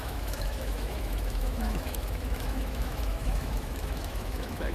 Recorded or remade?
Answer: remade